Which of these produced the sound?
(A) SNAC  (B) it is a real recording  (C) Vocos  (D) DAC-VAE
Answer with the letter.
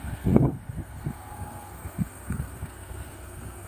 A